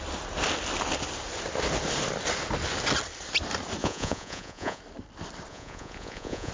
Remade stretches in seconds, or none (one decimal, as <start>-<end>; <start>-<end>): 3.8-4.8; 5.5-6.5